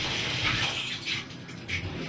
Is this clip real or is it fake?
real